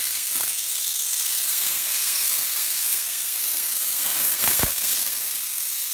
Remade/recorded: remade